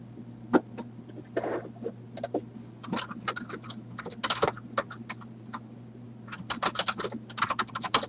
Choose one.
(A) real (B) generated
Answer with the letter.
A